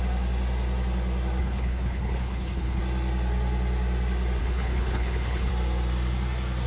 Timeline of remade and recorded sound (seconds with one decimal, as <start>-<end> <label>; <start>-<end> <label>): 0.0-1.4 recorded; 1.4-2.8 remade; 2.8-4.4 recorded; 4.4-5.5 remade; 5.5-6.7 recorded